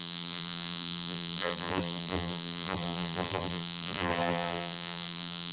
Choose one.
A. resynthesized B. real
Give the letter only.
A